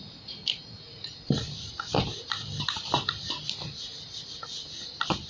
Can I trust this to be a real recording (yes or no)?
yes